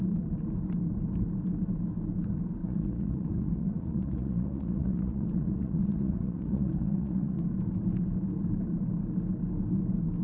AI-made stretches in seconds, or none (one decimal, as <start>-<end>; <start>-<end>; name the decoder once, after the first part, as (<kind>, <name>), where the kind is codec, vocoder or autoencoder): 2.6-7.4 (vocoder, Vocos)